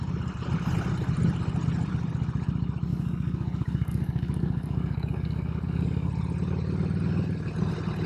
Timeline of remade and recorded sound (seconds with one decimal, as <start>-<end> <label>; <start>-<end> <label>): 0.0-2.9 recorded; 2.9-6.1 remade; 6.1-8.1 recorded